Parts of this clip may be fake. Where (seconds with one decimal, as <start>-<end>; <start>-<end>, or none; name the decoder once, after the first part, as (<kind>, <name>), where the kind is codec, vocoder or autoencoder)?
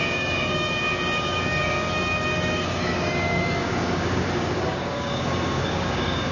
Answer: 0.0-6.3 (codec, DAC)